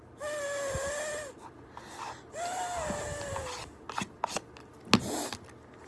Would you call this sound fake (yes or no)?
no